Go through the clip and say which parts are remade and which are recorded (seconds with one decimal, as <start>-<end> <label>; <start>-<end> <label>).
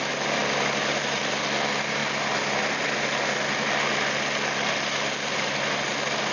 0.0-6.3 recorded